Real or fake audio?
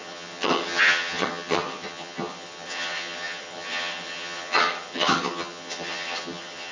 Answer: fake